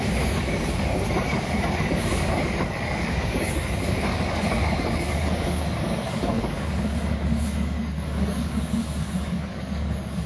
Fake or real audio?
fake